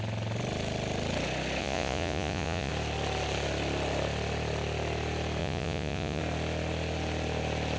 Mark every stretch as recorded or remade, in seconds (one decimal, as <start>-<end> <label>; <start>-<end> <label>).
0.0-1.6 recorded; 1.6-2.7 remade; 2.7-5.4 recorded; 5.4-6.2 remade; 6.2-7.8 recorded